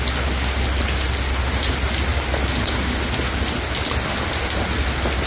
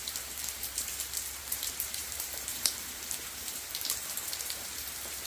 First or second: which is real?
first